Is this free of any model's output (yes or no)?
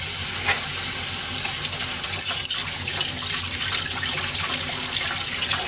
yes